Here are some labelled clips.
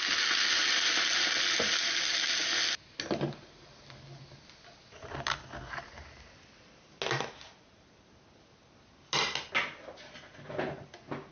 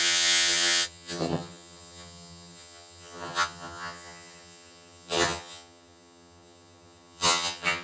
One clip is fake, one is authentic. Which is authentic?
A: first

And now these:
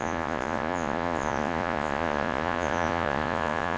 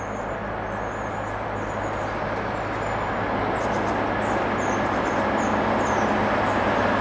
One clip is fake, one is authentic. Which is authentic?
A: second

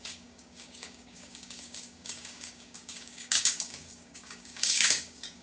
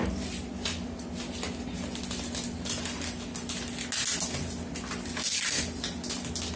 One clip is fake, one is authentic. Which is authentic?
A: second